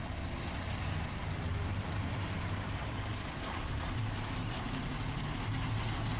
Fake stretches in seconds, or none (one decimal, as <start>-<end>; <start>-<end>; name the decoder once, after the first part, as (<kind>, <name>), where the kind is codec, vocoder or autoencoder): 1.5-5.2 (vocoder, BigVGAN v2)